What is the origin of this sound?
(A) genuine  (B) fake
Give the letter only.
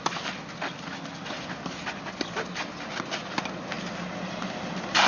A